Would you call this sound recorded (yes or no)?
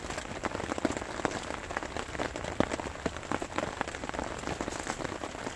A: yes